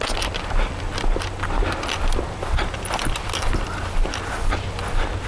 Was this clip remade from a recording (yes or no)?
no